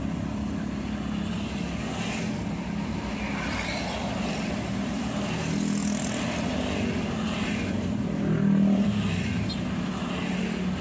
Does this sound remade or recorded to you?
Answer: recorded